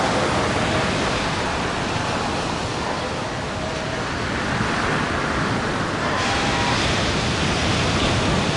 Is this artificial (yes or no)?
no